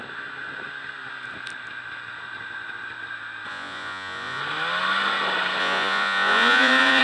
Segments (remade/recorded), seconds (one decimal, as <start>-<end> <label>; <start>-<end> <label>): 0.0-3.5 recorded; 3.5-4.4 remade; 4.4-5.6 recorded; 5.6-7.0 remade